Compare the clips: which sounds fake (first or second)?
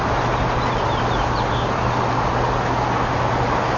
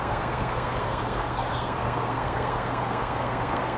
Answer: second